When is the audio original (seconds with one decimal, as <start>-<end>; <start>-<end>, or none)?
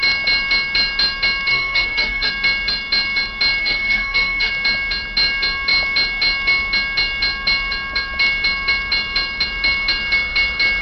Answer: 0.0-1.5; 2.3-3.6; 4.5-10.8